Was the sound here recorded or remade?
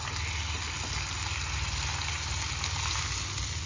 recorded